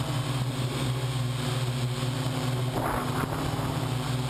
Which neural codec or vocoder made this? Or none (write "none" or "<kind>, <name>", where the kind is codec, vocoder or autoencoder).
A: none